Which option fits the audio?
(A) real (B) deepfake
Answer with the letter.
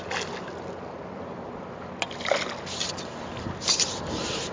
A